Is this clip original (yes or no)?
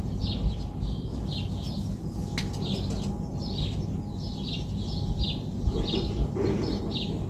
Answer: yes